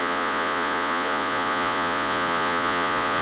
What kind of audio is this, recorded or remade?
remade